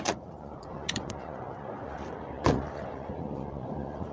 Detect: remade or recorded remade